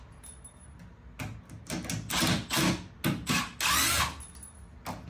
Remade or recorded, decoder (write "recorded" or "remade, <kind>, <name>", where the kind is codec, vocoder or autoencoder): recorded